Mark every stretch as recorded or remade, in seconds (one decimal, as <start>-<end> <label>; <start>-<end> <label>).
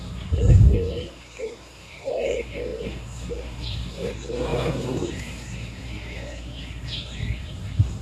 0.0-8.0 remade